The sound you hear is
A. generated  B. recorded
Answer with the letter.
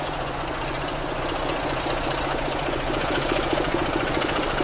A